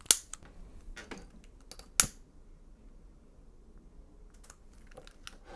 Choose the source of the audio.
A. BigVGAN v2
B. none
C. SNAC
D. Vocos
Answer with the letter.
B